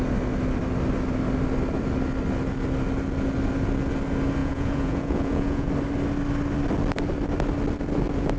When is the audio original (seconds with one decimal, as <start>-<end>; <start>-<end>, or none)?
0.0-4.4; 5.7-8.4